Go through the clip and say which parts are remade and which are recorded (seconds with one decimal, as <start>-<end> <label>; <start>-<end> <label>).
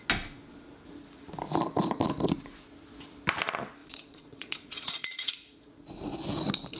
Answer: 0.0-3.8 recorded; 3.8-5.3 remade; 5.3-6.8 recorded